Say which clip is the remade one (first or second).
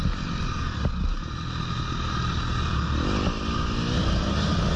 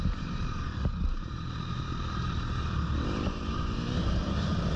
second